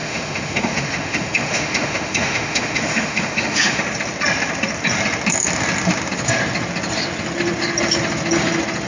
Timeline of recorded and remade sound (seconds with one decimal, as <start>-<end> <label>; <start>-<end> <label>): 0.0-3.8 remade; 3.8-8.9 recorded